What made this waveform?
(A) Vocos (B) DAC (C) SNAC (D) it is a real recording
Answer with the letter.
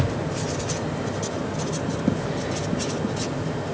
D